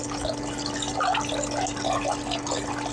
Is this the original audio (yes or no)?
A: yes